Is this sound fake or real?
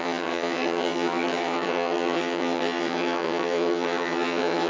fake